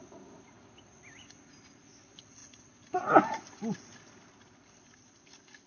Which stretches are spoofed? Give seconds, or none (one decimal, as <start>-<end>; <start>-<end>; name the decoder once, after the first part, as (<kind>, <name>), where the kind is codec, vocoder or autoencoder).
none